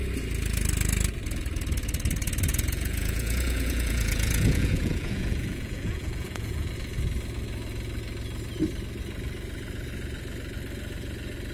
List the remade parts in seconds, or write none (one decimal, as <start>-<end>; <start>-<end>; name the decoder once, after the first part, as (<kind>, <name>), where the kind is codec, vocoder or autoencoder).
2.5-6.7 (vocoder, Vocos)